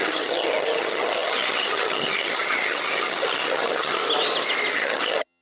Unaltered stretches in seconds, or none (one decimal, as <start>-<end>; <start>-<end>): 4.0-4.7